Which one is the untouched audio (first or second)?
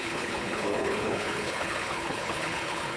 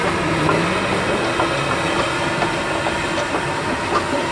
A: second